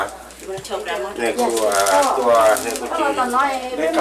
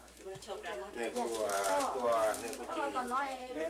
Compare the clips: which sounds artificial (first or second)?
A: second